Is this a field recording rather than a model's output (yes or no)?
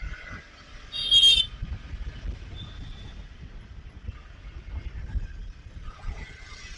yes